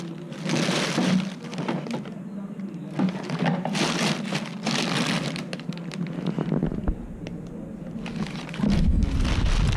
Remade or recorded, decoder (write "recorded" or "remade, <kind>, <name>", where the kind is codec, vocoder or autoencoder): recorded